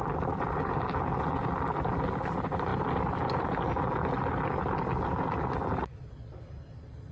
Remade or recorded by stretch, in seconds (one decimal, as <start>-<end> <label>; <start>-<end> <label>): 0.0-7.1 recorded